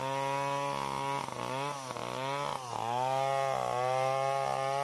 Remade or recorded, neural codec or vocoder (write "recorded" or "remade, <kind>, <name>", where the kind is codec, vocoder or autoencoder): recorded